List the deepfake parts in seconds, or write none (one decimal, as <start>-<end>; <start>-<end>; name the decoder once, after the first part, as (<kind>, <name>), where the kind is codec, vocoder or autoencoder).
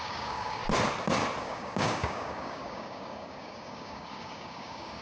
0.0-0.6 (codec, DAC); 1.4-5.0